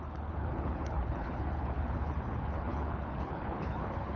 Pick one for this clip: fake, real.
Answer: fake